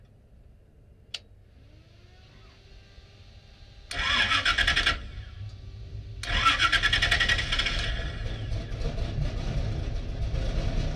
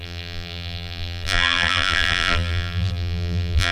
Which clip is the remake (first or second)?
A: second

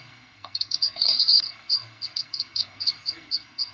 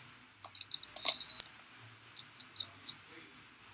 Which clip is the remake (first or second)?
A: first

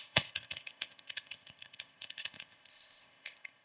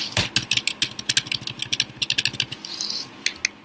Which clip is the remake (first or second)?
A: first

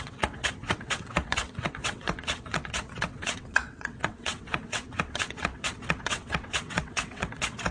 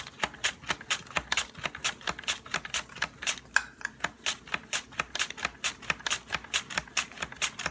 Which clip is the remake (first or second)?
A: first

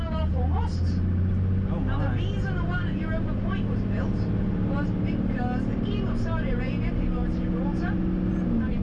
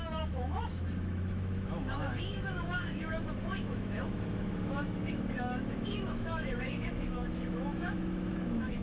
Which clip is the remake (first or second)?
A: second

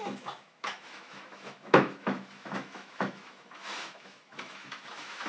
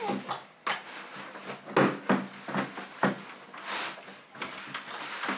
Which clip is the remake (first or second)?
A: first